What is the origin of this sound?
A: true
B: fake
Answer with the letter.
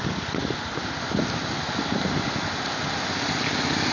A